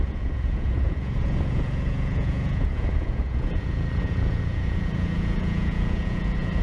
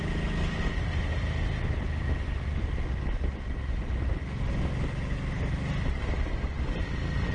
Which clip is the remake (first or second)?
first